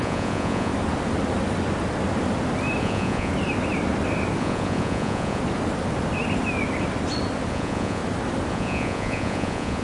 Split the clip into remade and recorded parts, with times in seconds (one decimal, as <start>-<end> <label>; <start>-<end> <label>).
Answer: 0.0-0.7 remade; 0.7-2.8 recorded; 2.8-3.3 remade; 3.3-4.4 recorded; 4.4-5.4 remade; 5.4-7.5 recorded; 7.5-8.0 remade; 8.0-8.5 recorded; 8.5-9.8 remade